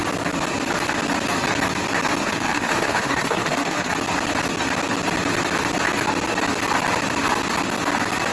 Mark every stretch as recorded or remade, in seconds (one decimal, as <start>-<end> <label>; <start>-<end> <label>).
0.0-2.2 recorded; 2.2-3.9 remade; 3.9-8.3 recorded